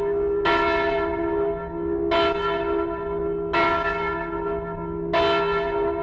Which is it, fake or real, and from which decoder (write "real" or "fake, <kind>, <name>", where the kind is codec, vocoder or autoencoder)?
real